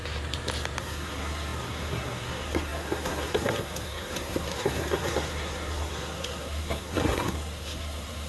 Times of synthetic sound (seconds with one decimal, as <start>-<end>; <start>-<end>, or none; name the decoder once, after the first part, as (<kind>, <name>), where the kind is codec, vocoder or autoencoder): 0.8-8.3 (codec, SNAC)